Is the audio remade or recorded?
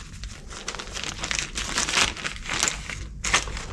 recorded